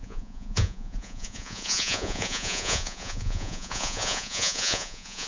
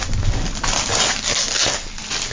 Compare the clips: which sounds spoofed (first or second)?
first